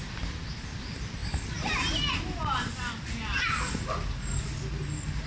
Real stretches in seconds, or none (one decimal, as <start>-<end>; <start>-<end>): 0.0-5.3